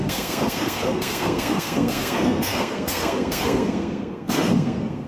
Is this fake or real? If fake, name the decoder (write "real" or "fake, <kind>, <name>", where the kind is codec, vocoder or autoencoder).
fake, codec, SNAC